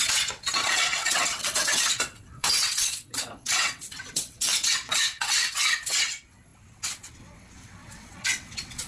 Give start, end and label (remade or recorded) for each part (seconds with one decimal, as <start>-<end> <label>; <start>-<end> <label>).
0.0-8.9 remade

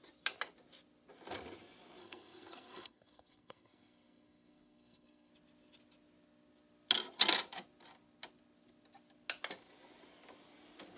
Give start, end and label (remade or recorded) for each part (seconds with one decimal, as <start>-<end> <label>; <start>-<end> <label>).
0.0-2.0 recorded; 2.0-5.3 remade; 5.3-11.0 recorded

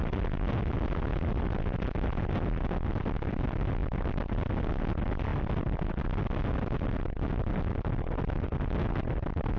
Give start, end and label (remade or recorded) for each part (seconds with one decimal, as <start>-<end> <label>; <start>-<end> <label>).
0.0-9.6 recorded

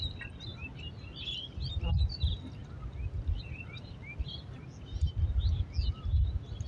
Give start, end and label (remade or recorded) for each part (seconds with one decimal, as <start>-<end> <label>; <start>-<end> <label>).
0.0-6.7 recorded